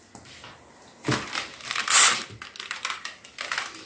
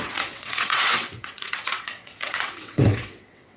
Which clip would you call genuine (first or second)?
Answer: first